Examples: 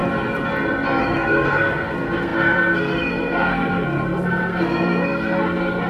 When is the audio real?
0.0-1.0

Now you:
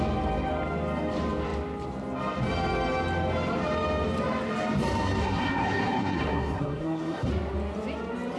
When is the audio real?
0.0-5.2; 7.3-8.4

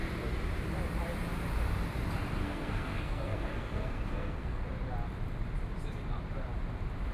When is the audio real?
0.0-2.4; 4.7-7.1

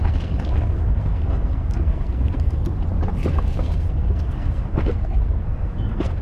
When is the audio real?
2.6-3.3